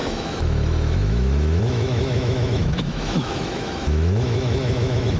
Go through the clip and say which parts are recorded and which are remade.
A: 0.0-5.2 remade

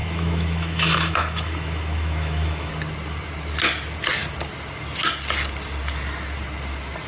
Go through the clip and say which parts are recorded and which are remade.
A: 0.0-2.7 remade; 2.7-7.1 recorded